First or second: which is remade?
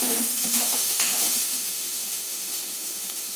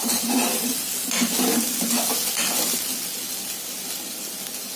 first